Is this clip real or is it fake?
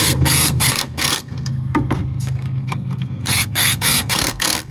fake